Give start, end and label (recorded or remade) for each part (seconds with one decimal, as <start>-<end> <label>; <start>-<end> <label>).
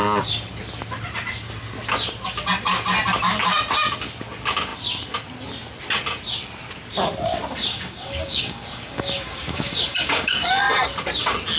0.0-7.7 recorded; 7.7-10.5 remade; 10.5-11.6 recorded